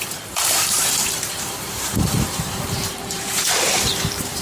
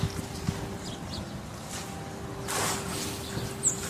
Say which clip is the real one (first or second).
second